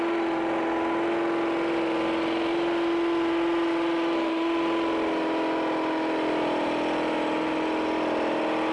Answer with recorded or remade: recorded